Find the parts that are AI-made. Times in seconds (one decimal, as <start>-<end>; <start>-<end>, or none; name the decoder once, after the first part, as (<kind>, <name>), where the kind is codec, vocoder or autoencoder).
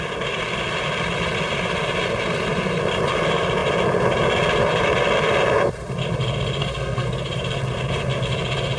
6.6-7.1 (codec, SNAC)